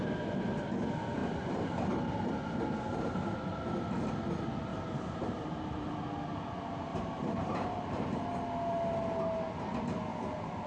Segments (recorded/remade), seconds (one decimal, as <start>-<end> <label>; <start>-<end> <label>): 0.0-1.2 recorded; 1.2-2.3 remade; 2.3-4.7 recorded; 4.7-5.9 remade; 5.9-6.9 recorded; 6.9-8.2 remade; 8.2-10.1 recorded; 10.1-10.7 remade

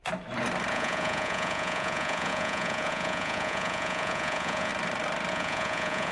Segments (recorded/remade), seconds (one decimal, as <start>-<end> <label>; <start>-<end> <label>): 0.0-0.7 recorded; 0.7-4.7 remade; 4.7-5.3 recorded; 5.3-6.1 remade

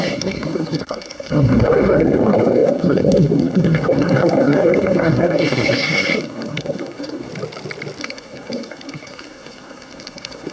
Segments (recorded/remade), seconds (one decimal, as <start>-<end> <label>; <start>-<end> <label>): 0.0-7.3 remade; 7.3-8.0 recorded; 8.0-10.5 remade

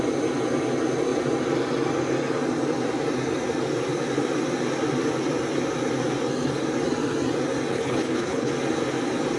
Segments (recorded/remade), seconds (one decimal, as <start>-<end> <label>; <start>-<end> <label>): 0.0-7.7 recorded; 7.7-8.5 remade; 8.5-9.4 recorded